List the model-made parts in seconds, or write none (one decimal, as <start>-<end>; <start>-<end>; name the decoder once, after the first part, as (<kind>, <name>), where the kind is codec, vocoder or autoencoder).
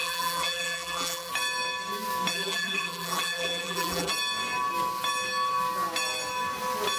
0.0-1.3 (vocoder, BigVGAN v2); 2.3-4.1